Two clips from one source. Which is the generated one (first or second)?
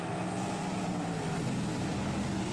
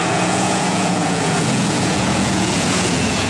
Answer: second